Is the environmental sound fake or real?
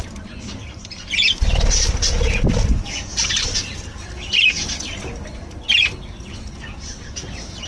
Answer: real